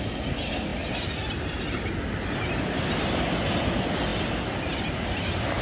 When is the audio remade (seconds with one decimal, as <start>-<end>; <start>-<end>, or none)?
none